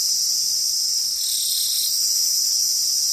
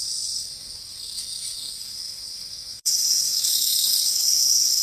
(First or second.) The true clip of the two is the first